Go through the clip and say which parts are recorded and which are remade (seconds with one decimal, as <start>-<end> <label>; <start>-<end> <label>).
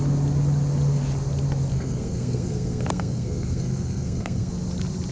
0.0-1.7 recorded; 1.7-4.5 remade; 4.5-5.1 recorded